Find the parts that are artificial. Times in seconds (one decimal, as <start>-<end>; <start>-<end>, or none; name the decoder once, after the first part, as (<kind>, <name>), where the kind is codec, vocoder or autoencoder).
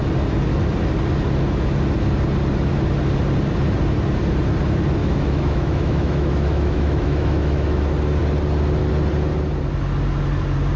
5.0-7.8 (autoencoder, DAC-VAE)